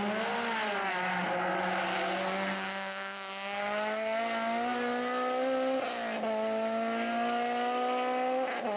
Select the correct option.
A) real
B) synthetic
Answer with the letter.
A